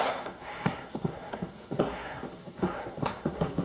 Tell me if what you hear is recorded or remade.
remade